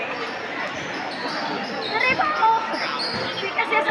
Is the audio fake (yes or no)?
no